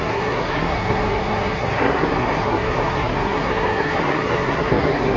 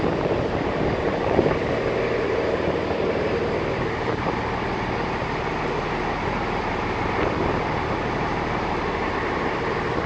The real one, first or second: second